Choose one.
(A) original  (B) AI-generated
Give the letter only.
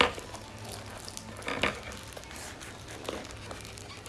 A